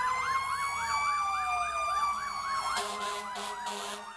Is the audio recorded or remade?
recorded